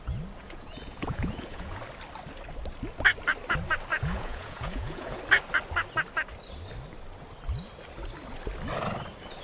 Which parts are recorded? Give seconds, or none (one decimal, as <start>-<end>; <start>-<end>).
0.0-0.4; 1.8-3.9; 5.2-9.4